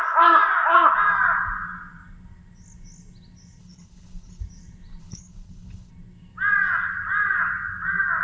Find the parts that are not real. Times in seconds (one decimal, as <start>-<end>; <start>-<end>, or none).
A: 3.6-4.4; 5.0-5.9